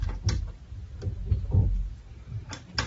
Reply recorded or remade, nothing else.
recorded